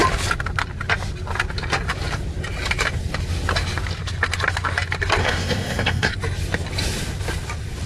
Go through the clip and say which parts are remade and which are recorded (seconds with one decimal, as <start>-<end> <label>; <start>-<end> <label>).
0.0-5.2 recorded; 5.2-6.1 remade; 6.1-7.9 recorded